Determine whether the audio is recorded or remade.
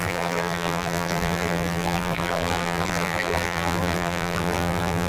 remade